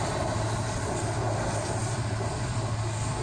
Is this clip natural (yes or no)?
yes